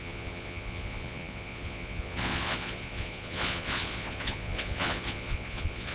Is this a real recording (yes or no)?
no